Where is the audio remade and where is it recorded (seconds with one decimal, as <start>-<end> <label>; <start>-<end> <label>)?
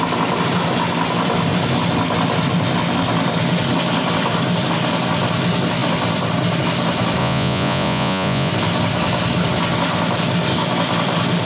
0.0-7.2 recorded; 7.2-8.5 remade; 8.5-11.4 recorded